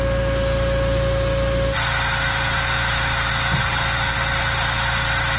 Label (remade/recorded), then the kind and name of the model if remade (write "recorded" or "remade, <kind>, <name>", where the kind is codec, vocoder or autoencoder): recorded